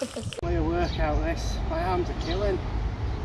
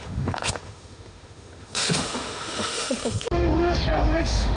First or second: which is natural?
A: first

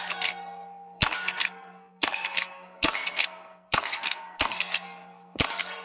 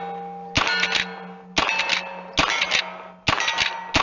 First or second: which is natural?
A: second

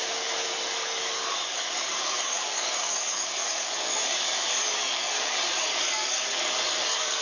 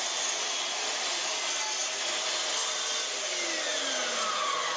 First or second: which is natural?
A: second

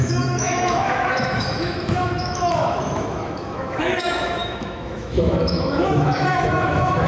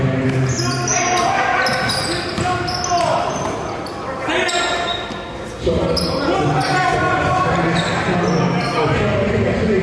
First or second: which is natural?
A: second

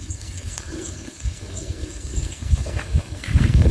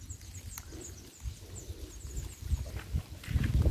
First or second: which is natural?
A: second